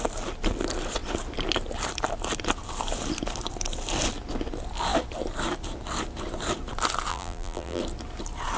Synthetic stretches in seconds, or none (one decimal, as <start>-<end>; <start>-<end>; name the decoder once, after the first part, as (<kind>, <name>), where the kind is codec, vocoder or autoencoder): 7.1-7.8 (vocoder, BigVGAN v2)